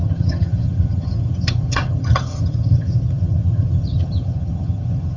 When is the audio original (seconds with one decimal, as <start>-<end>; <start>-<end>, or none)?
none